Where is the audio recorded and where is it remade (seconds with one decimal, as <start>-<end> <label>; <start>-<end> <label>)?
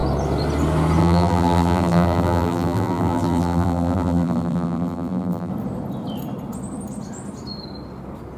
0.0-1.0 recorded; 1.0-5.5 remade; 5.5-8.4 recorded